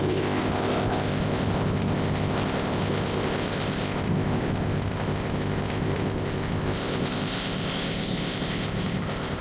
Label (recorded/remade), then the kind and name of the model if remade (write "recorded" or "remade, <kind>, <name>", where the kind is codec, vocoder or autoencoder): remade, codec, ZipCodec